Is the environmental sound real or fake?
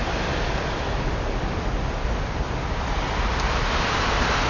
real